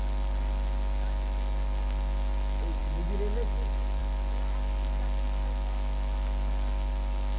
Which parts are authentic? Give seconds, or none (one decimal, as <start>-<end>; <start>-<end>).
0.0-7.4